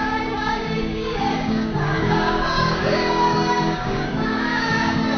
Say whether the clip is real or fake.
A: fake